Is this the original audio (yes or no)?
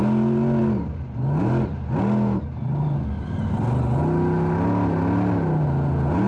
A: yes